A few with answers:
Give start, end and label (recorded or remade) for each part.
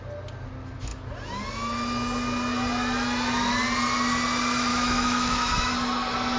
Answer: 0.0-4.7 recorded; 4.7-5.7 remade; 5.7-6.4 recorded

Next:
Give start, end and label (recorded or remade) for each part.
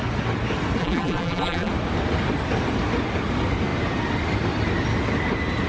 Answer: 0.0-0.8 recorded; 0.8-1.7 remade; 1.7-5.7 recorded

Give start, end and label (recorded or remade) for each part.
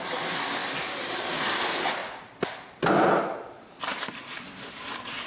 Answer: 0.0-0.6 recorded; 0.6-1.4 remade; 1.4-5.3 recorded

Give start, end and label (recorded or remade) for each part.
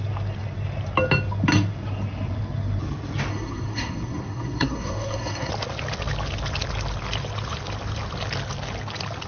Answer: 0.0-3.3 recorded; 3.3-5.5 remade; 5.5-9.3 recorded